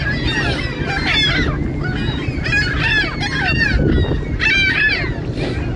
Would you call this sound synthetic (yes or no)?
no